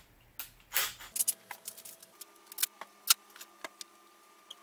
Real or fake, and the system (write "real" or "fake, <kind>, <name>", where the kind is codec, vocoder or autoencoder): real